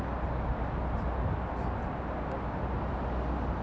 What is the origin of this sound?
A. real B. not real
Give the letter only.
A